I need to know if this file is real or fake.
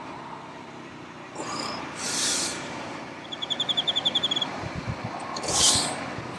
fake